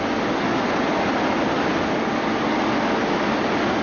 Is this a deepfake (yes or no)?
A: no